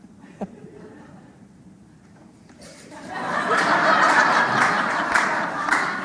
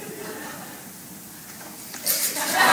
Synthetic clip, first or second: first